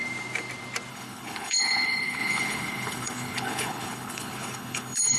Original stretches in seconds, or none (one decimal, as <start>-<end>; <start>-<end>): 0.0-0.9